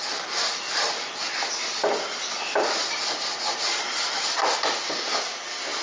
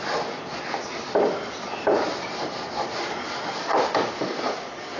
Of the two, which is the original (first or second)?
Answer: first